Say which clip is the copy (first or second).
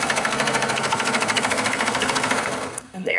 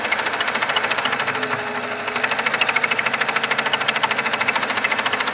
first